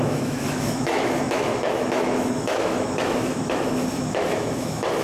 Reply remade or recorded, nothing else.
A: remade